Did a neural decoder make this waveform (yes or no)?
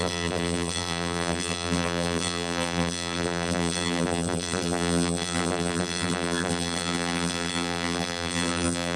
yes